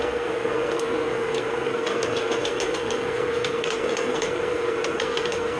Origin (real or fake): fake